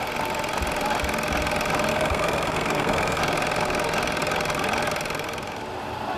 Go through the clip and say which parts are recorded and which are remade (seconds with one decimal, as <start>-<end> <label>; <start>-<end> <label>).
0.0-1.9 recorded; 1.9-3.2 remade; 3.2-6.2 recorded